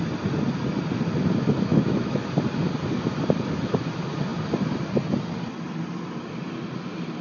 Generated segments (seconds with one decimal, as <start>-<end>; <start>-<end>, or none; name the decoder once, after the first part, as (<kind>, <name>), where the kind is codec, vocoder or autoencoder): 1.7-2.2 (autoencoder, DAC-VAE)